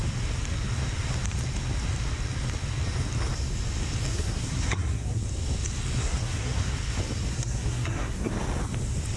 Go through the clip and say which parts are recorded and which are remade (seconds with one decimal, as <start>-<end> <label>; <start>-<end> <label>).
0.0-4.1 recorded; 4.1-5.2 remade; 5.2-6.0 recorded; 6.0-6.7 remade; 6.7-7.3 recorded; 7.3-8.3 remade; 8.3-9.2 recorded